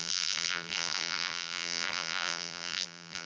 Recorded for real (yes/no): no